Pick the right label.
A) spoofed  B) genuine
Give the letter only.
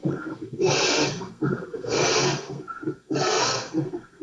A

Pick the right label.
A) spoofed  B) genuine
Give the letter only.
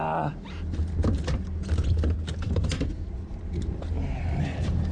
B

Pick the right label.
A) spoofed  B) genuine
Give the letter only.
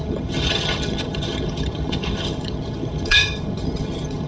A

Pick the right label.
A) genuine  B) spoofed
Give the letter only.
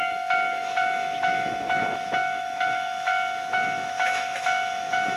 B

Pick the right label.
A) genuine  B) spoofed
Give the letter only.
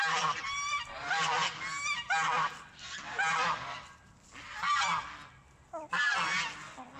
A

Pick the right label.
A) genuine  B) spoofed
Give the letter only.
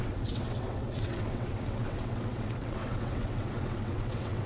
B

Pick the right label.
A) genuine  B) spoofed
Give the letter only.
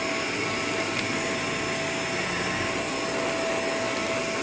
A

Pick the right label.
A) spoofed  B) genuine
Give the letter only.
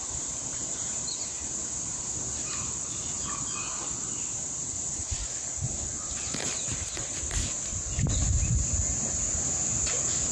B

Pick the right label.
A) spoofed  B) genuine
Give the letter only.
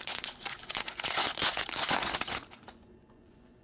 A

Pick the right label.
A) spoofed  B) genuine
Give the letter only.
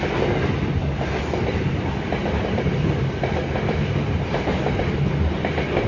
B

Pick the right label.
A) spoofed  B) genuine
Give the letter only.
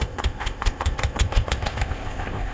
A